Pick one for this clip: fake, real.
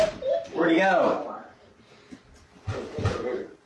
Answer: real